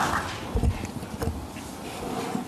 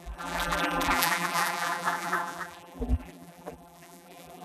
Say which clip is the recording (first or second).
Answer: first